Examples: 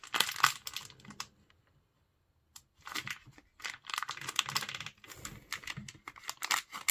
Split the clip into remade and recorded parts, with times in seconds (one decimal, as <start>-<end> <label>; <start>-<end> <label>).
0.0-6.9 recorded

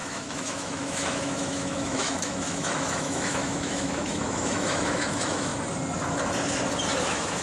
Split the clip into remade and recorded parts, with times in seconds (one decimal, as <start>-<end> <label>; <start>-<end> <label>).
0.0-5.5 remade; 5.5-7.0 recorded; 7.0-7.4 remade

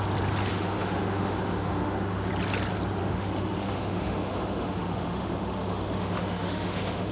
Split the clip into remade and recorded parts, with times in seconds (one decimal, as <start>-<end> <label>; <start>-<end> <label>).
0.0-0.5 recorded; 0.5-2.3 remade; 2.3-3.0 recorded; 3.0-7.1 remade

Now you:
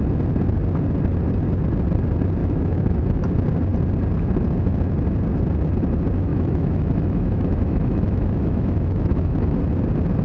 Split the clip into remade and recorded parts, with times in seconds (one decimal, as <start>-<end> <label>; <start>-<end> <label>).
0.0-2.4 recorded; 2.4-3.2 remade; 3.2-6.3 recorded; 6.3-9.6 remade; 9.6-10.2 recorded